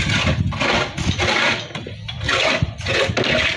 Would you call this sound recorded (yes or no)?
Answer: yes